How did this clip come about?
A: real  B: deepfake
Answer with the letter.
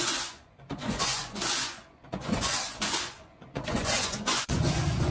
B